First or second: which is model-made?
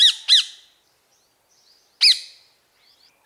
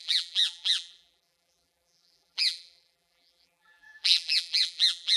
second